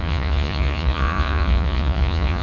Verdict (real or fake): fake